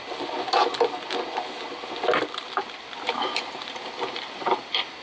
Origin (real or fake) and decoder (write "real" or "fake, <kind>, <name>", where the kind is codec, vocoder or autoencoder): real